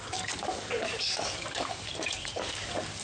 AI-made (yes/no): yes